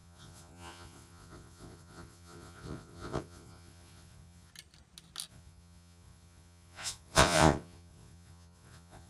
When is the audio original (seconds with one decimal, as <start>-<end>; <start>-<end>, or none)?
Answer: 4.5-5.3